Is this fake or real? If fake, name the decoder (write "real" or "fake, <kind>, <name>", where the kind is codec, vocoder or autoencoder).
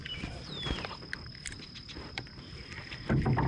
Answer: real